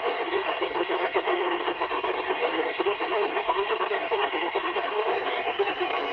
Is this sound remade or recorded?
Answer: remade